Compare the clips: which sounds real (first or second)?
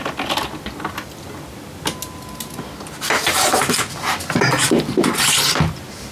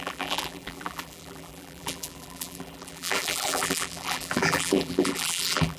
first